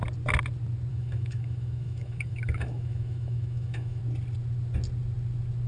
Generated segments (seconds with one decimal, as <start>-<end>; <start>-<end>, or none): 0.9-4.0